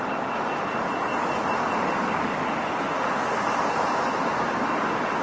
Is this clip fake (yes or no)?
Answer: no